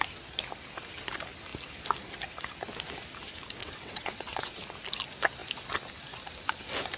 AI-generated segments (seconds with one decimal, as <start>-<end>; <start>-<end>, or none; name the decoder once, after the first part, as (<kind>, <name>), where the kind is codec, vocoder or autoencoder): 3.6-4.5 (vocoder, WaveNeXt)